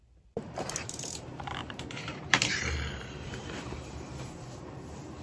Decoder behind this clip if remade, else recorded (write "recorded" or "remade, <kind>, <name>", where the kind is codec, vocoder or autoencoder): remade, vocoder, BigVGAN v2